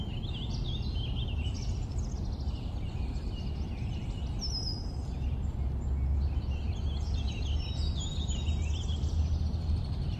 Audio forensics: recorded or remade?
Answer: recorded